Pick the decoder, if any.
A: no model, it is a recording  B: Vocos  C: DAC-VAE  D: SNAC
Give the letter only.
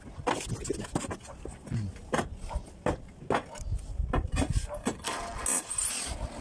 A